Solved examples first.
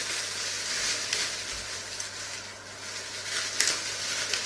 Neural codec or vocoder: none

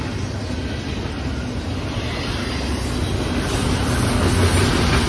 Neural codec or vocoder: none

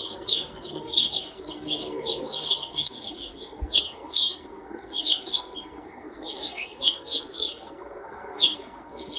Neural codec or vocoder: codec, SNAC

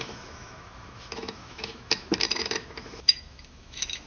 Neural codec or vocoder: autoencoder, DAC-VAE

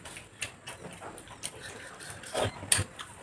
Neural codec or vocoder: none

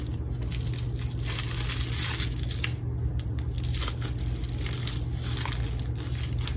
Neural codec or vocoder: none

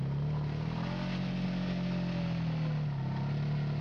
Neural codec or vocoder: none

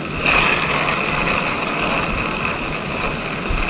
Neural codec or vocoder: none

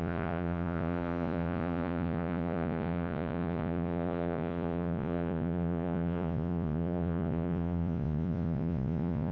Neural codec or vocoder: vocoder, Vocos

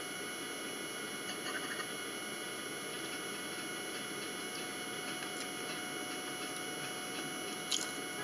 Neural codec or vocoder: none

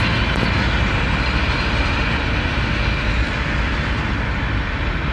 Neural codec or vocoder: none